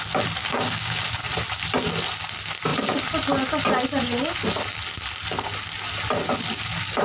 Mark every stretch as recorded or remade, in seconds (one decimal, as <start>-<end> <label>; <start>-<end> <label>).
0.0-0.4 recorded; 0.4-1.0 remade; 1.0-7.0 recorded